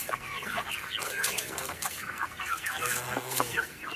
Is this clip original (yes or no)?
no